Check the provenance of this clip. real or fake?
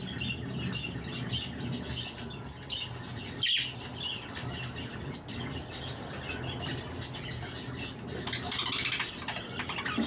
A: real